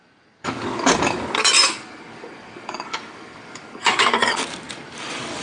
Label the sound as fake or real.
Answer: fake